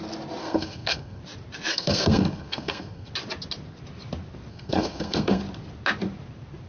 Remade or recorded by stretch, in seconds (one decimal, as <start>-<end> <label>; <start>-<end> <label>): 0.0-0.4 recorded; 0.4-1.2 remade; 1.2-1.7 recorded; 1.7-3.1 remade; 3.1-4.5 recorded; 4.5-5.4 remade; 5.4-6.7 recorded